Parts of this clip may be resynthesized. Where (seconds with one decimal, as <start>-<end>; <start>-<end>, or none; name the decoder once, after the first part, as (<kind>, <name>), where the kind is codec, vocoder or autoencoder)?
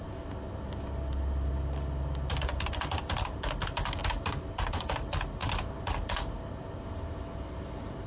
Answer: none